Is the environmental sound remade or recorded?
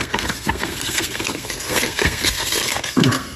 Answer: remade